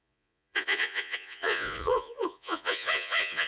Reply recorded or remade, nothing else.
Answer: remade